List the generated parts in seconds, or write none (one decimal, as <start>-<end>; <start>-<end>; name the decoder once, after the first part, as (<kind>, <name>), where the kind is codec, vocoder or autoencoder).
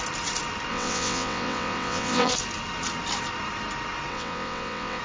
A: 0.7-2.3 (vocoder, WaveNeXt); 4.1-5.0